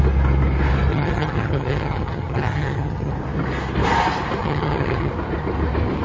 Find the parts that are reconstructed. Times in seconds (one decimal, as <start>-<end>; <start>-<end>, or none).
0.9-3.1; 4.4-5.1